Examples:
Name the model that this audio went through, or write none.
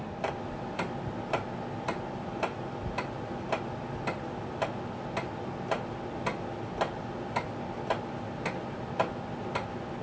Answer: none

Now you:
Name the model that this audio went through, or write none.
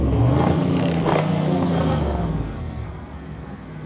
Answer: codec, SNAC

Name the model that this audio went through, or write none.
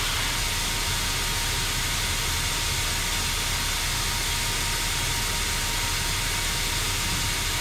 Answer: none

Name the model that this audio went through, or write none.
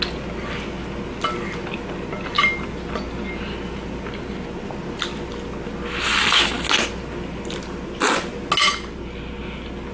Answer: none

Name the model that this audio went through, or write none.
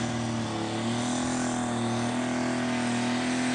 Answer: none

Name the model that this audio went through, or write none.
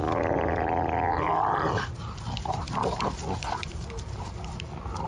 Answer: none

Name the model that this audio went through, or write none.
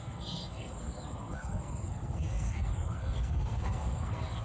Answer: codec, SNAC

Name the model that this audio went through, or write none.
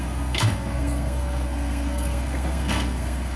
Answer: codec, SNAC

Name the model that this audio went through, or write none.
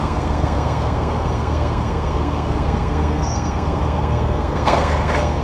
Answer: codec, SNAC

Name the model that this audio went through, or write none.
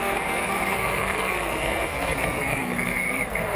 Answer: codec, SNAC